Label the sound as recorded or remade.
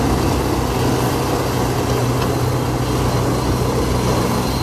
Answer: recorded